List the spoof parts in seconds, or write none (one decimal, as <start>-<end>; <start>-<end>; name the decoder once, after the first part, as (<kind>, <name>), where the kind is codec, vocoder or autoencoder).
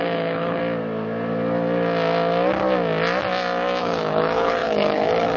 0.0-0.6 (codec, HILCodec); 3.8-5.4